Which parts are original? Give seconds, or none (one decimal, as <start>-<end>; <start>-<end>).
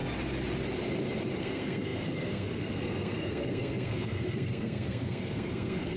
0.0-1.4